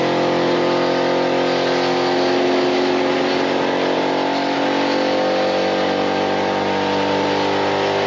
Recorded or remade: recorded